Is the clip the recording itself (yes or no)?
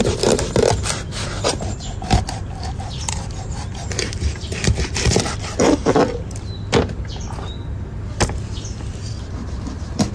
yes